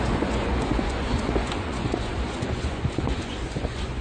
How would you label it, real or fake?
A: fake